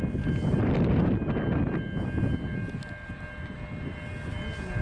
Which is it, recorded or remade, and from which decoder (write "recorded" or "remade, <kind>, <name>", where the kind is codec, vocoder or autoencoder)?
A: recorded